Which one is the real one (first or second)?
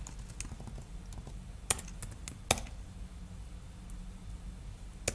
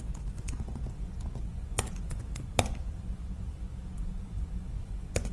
first